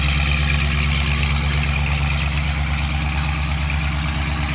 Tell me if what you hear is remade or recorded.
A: recorded